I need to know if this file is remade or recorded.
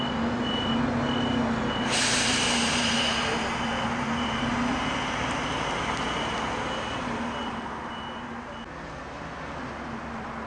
recorded